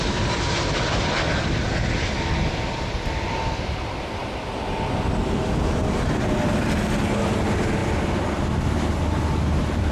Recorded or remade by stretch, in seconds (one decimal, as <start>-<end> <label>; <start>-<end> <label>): 0.0-9.9 recorded